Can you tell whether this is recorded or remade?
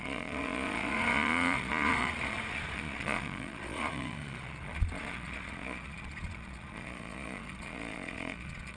remade